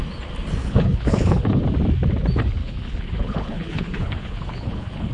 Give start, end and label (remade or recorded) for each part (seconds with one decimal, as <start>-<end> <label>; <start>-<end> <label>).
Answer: 0.0-0.6 recorded; 0.6-1.6 remade; 1.6-2.6 recorded; 2.6-5.1 remade